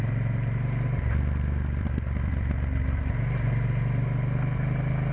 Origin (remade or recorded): recorded